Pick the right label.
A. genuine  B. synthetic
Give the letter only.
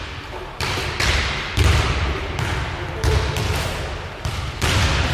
A